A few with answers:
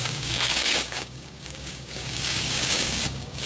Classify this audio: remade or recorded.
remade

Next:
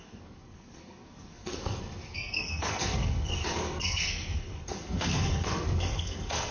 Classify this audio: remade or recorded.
remade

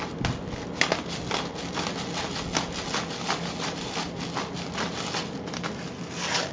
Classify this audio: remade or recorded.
recorded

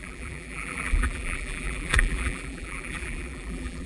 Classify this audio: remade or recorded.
remade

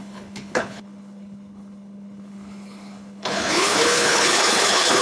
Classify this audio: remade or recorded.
remade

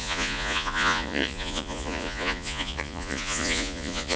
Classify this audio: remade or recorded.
remade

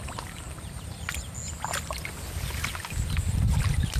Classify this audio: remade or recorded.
recorded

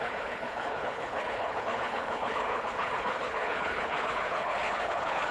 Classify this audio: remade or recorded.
remade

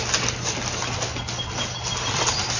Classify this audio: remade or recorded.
recorded